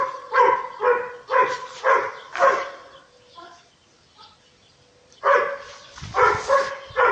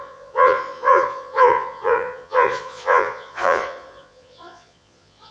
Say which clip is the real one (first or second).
first